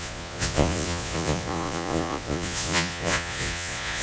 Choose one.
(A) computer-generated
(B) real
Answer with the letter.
A